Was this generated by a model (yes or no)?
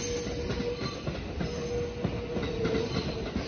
no